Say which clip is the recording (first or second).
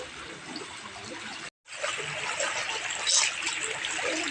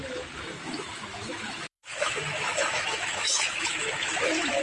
first